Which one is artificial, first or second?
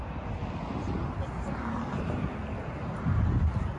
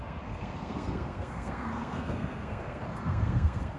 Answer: second